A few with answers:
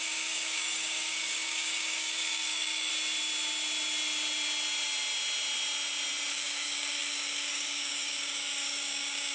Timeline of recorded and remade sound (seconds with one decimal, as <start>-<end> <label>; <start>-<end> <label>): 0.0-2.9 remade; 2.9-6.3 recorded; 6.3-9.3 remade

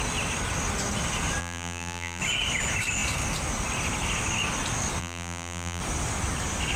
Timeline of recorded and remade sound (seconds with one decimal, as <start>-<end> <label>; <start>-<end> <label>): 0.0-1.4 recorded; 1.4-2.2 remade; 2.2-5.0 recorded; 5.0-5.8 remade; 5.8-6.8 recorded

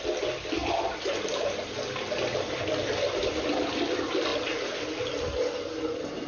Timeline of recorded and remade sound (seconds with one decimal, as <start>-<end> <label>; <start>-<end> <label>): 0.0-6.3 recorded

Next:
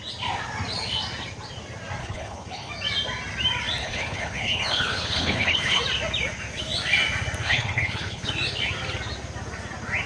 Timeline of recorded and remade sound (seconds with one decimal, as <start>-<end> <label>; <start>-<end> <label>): 0.0-2.0 recorded; 2.0-2.7 remade; 2.7-3.8 recorded; 3.8-5.8 remade; 5.8-7.4 recorded; 7.4-8.3 remade; 8.3-10.1 recorded